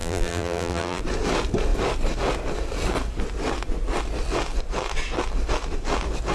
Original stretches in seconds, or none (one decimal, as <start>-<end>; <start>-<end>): 1.0-6.3